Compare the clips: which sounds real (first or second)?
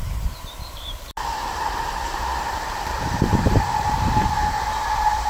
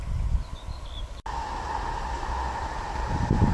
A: second